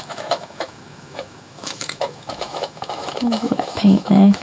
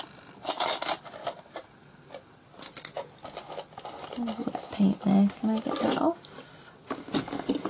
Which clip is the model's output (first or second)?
first